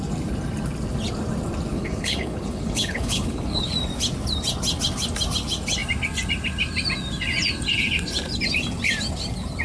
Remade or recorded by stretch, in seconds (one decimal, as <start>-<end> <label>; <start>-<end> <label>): 0.0-1.7 recorded; 1.7-3.7 remade; 3.7-9.6 recorded